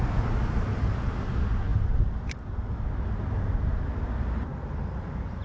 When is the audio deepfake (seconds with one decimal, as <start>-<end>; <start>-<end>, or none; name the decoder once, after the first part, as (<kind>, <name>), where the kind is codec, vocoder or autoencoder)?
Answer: 1.7-2.9 (vocoder, BigVGAN v2)